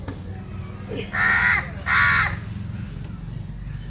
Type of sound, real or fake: real